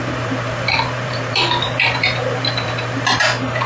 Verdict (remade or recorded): remade